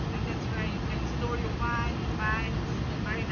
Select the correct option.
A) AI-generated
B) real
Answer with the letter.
B